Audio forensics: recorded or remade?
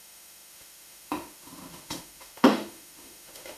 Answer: remade